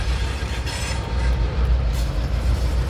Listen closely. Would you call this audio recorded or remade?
remade